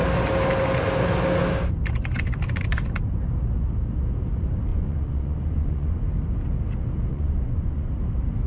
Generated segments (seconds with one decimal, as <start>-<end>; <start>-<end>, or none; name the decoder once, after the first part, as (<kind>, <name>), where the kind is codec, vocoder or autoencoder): 4.7-6.0 (vocoder, Vocos); 7.1-7.9